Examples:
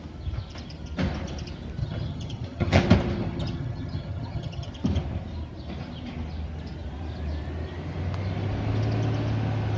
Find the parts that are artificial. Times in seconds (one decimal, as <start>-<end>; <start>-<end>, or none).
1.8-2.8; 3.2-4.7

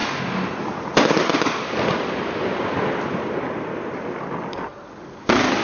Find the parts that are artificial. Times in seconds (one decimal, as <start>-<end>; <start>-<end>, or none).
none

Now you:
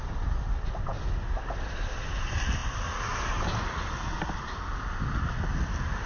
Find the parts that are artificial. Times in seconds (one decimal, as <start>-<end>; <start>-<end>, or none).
none